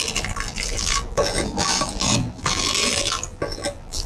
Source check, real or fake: fake